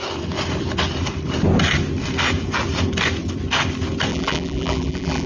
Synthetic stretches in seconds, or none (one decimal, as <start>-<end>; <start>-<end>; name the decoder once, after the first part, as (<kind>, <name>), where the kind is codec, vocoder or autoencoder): 4.1-5.3 (vocoder, BigVGAN v2)